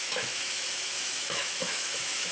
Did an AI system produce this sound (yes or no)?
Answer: yes